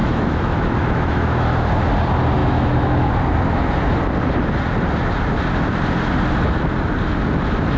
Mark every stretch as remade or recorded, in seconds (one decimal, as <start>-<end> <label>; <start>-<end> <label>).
0.0-1.7 remade; 1.7-2.4 recorded; 2.4-3.1 remade; 3.1-7.8 recorded